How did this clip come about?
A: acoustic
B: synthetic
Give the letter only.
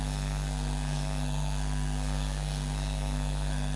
B